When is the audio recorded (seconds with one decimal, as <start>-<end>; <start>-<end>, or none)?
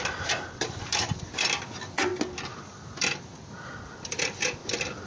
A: 2.1-4.0